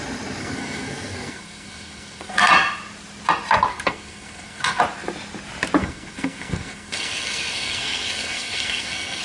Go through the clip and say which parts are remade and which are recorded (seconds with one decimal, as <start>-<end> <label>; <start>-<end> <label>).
0.0-0.4 recorded; 0.4-2.5 remade; 2.5-3.7 recorded; 3.7-4.8 remade; 4.8-5.8 recorded; 5.8-9.2 remade